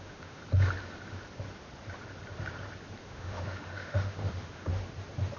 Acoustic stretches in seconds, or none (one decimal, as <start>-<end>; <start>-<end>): 0.4-3.0; 4.7-5.4